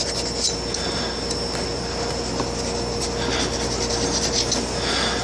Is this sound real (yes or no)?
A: yes